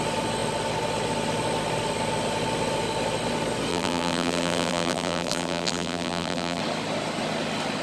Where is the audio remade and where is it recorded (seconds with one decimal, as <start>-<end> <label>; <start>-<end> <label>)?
0.0-3.7 recorded; 3.7-6.6 remade; 6.6-7.8 recorded

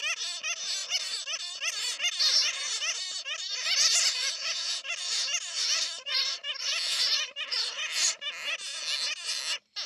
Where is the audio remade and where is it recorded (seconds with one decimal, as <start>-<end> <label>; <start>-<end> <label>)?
0.0-0.8 recorded; 0.8-1.5 remade; 1.5-3.5 recorded; 3.5-8.1 remade; 8.1-9.9 recorded

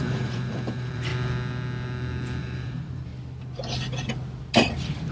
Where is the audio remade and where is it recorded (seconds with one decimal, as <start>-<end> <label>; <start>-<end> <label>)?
0.0-1.1 remade; 1.1-2.4 recorded; 2.4-3.1 remade; 3.1-5.1 recorded

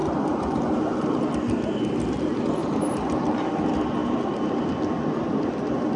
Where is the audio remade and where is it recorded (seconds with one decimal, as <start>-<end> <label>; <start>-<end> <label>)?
0.0-1.3 remade; 1.3-2.6 recorded; 2.6-3.5 remade; 3.5-6.0 recorded

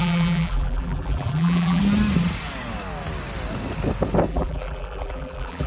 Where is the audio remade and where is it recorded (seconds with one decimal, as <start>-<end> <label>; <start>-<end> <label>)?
0.0-1.8 remade; 1.8-4.3 recorded; 4.3-5.7 remade

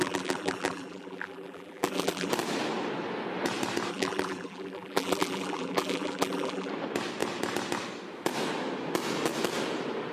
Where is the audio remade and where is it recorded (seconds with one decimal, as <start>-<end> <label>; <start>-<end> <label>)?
0.0-2.3 remade; 2.3-3.9 recorded; 3.9-6.7 remade; 6.7-10.1 recorded

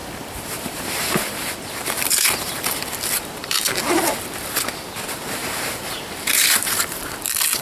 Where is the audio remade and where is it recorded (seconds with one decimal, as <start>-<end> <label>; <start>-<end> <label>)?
0.0-3.9 remade; 3.9-5.4 recorded; 5.4-7.0 remade; 7.0-7.6 recorded

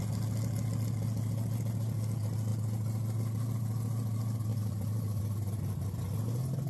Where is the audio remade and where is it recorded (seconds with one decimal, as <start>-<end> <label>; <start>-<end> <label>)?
0.0-4.5 recorded; 4.5-5.2 remade; 5.2-6.7 recorded